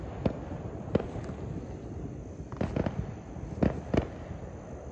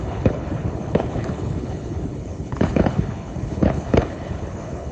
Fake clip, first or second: second